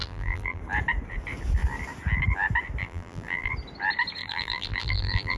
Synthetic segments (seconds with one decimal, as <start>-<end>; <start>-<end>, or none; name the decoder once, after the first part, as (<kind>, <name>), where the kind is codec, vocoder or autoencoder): 0.0-0.6 (vocoder, BigVGAN v2); 2.8-3.5; 4.2-5.4